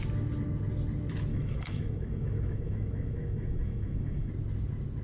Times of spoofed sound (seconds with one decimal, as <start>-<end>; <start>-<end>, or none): 1.3-4.3